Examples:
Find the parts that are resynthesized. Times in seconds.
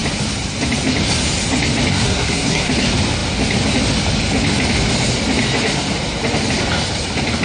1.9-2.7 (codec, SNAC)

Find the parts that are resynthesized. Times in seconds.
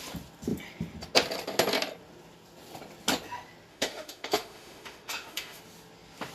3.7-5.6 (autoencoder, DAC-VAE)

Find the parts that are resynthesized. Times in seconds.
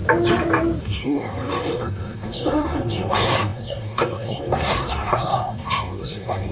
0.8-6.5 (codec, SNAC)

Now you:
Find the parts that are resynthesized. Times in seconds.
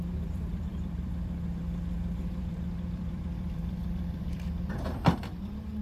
0.0-5.8 (vocoder, BigVGAN v2)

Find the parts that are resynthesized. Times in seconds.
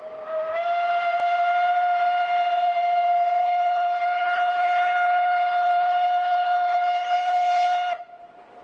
3.4-8.0 (codec, HILCodec)